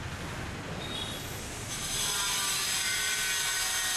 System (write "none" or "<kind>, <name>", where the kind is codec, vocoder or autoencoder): none